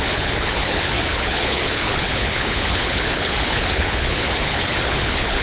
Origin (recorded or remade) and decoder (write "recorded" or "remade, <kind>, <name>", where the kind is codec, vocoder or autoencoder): remade, codec, HILCodec